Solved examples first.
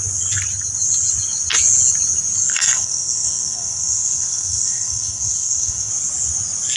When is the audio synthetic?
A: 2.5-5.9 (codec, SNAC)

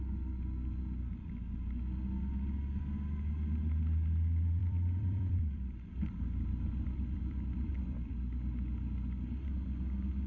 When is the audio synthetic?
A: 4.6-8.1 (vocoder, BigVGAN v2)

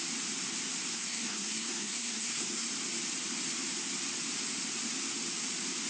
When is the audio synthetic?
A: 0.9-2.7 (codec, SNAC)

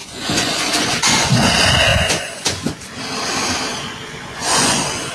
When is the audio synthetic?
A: 0.0-1.5 (vocoder, Vocos); 1.9-2.8; 3.7-5.1